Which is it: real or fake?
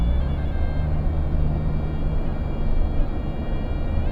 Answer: real